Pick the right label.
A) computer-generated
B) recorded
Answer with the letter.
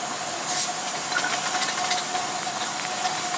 B